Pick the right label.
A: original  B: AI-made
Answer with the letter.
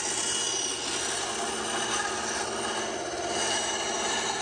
A